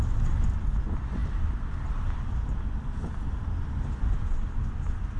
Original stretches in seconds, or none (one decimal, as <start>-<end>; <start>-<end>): 0.0-5.2